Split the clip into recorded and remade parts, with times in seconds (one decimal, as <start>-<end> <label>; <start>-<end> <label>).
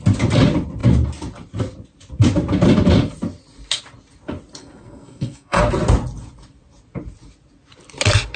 0.0-4.6 recorded; 4.6-5.6 remade; 5.6-8.4 recorded